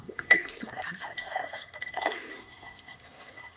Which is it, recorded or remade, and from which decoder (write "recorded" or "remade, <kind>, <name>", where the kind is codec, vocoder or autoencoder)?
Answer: remade, codec, SNAC